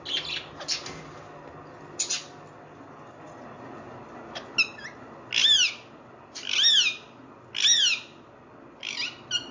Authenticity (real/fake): real